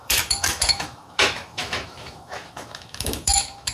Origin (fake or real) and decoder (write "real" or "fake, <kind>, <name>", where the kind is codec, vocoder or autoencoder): fake, autoencoder, DAC-VAE